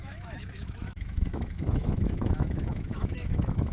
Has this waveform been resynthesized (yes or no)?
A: yes